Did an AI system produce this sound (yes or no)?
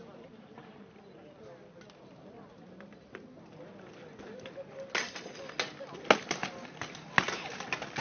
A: no